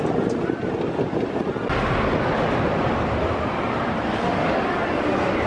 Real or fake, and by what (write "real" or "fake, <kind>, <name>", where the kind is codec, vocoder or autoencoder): real